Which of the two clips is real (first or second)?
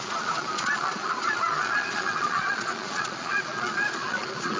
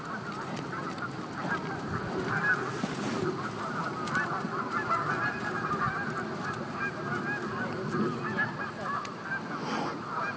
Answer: second